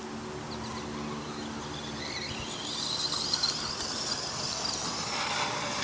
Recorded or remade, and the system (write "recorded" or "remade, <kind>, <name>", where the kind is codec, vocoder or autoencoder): recorded